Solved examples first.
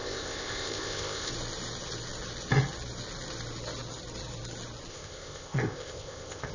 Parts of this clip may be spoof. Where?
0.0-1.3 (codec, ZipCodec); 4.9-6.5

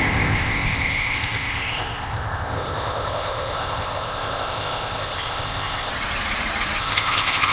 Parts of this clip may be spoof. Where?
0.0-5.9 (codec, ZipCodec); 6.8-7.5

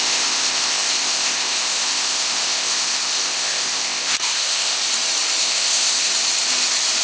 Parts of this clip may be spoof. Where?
0.0-4.8 (codec, ZipCodec); 5.4-6.1

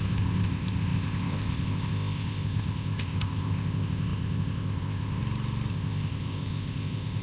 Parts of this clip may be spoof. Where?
0.0-5.2 (codec, ZipCodec); 5.7-7.2

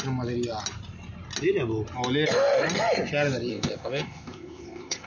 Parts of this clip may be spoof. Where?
3.5-5.1 (codec, ZipCodec)

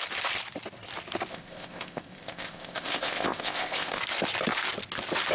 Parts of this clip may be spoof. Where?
1.3-4.0 (codec, ZipCodec)

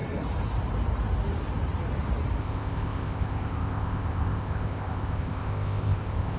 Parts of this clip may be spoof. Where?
2.4-6.4 (codec, ZipCodec)

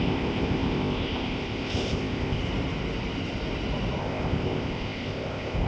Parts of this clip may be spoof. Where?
0.0-2.4 (codec, ZipCodec); 4.0-5.7